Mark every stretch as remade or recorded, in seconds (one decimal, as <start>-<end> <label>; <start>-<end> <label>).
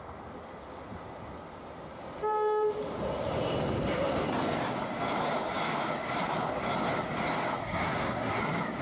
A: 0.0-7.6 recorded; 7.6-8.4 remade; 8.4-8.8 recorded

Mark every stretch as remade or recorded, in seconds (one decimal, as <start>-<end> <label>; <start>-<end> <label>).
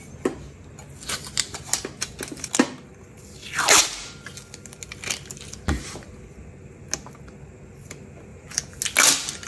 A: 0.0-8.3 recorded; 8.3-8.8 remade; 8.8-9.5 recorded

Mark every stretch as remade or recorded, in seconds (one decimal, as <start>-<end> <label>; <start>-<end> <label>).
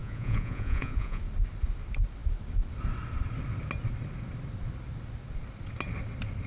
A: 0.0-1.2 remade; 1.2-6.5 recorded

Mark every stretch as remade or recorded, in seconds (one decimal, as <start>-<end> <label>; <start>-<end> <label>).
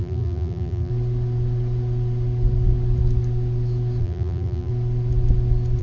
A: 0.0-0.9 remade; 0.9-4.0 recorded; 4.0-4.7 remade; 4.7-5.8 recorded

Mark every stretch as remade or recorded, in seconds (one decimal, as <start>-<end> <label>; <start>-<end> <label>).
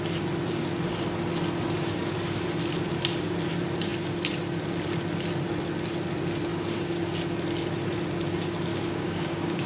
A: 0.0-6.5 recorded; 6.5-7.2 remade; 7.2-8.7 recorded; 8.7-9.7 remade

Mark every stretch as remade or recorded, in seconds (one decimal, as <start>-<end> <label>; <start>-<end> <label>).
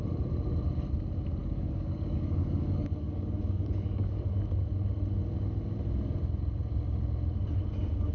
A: 0.0-1.4 recorded; 1.4-4.3 remade; 4.3-8.1 recorded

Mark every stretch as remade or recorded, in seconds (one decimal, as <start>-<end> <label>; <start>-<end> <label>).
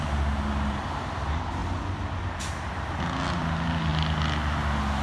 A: 0.0-5.0 recorded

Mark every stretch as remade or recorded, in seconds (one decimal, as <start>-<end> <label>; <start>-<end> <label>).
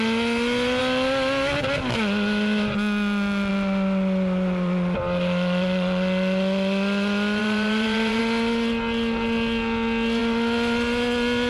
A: 0.0-7.4 recorded; 7.4-8.2 remade; 8.2-11.5 recorded